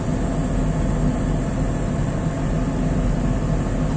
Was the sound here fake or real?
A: real